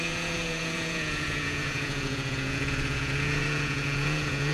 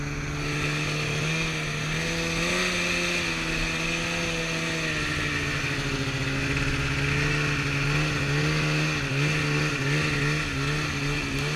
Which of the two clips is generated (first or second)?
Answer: first